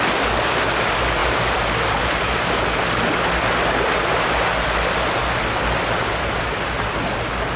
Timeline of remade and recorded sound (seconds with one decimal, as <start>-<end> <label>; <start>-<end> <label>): 0.0-7.6 recorded